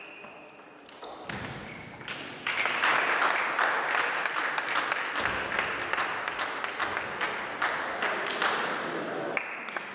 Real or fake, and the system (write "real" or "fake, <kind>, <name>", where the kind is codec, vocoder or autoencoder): real